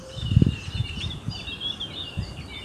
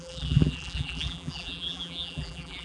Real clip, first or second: first